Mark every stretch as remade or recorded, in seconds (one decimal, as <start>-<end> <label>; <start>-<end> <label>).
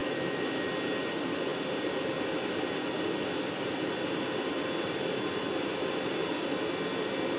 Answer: 0.0-0.7 remade; 0.7-7.4 recorded